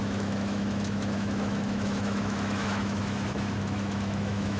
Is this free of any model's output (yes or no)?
no